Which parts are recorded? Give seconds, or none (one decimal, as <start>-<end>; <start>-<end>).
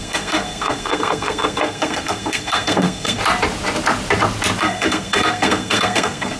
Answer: 3.2-4.6